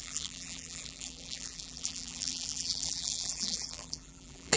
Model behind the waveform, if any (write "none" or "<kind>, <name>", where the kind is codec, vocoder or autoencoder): vocoder, BigVGAN v2